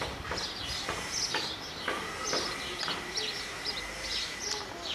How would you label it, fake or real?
real